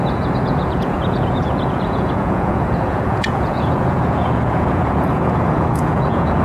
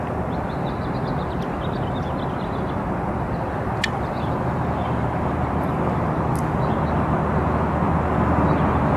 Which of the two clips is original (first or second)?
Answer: second